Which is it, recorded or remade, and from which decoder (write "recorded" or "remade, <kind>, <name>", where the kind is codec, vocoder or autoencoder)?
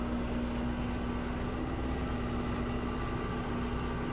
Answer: recorded